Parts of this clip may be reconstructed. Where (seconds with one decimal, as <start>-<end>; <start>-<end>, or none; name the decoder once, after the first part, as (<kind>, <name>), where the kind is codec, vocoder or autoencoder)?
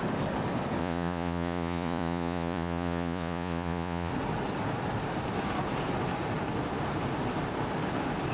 0.8-4.1 (vocoder, Vocos)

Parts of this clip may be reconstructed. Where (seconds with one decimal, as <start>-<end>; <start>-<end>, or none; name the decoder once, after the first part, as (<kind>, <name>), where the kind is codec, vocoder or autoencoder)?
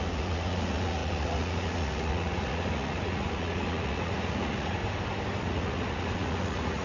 0.0-4.8 (vocoder, Vocos); 5.4-6.8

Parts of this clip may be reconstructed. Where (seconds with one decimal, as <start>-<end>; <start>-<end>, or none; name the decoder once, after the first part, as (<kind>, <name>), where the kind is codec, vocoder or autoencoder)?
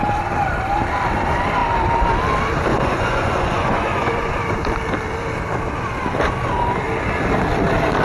2.7-4.3 (vocoder, Vocos)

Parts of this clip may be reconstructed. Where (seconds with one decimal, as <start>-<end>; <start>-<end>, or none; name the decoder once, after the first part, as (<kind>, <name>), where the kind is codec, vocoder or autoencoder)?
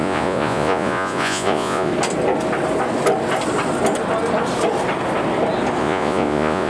0.0-1.9 (vocoder, Vocos); 5.8-6.7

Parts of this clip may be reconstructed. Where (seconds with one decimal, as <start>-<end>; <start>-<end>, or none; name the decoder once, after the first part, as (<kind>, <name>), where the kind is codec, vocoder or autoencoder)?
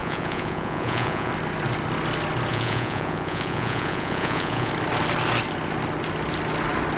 0.0-1.3 (vocoder, Vocos); 2.5-4.7